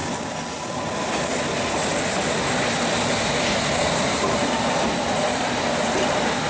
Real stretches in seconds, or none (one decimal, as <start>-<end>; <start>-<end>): 0.0-6.5